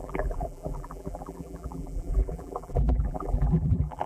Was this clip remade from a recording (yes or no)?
yes